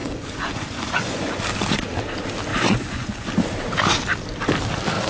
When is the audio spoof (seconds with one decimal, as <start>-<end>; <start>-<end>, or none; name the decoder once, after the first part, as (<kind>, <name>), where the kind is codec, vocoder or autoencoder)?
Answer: 0.0-1.3 (vocoder, Vocos); 2.5-3.3